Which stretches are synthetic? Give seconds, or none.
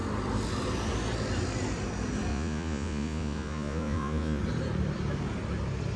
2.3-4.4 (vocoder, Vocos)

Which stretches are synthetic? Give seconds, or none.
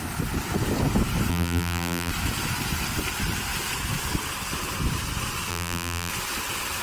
1.3-2.1 (vocoder, BigVGAN v2); 5.5-6.1